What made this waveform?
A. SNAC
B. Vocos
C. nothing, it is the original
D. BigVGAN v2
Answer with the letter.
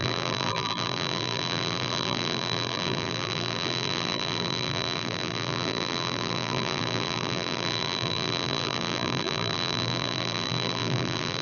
D